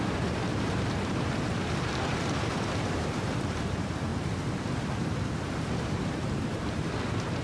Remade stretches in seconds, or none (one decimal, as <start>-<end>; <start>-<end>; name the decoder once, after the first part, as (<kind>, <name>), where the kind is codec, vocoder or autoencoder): 0.0-4.1 (vocoder, BigVGAN v2); 5.6-7.4